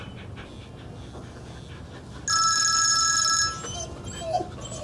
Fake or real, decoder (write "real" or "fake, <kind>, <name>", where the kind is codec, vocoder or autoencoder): real